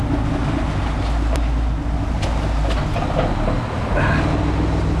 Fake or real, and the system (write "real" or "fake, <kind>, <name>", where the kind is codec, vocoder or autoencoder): real